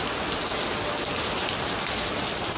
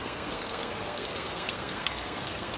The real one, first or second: first